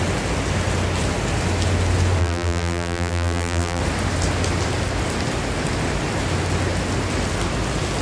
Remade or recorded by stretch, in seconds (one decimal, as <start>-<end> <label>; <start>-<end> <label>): 0.0-2.2 recorded; 2.2-3.8 remade; 3.8-8.0 recorded